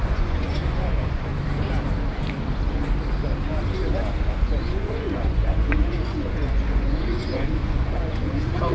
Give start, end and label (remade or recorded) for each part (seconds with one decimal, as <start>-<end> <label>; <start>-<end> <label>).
0.0-1.3 remade; 1.3-4.4 recorded; 4.4-8.7 remade